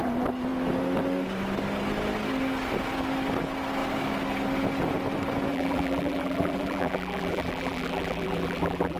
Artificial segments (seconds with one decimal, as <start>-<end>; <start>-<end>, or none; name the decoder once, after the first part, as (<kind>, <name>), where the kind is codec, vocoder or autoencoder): 5.5-9.0 (vocoder, BigVGAN v2)